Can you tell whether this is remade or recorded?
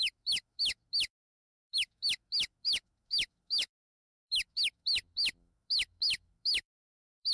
remade